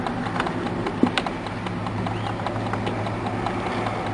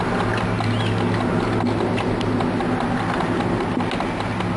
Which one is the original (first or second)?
second